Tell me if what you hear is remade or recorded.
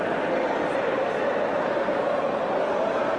recorded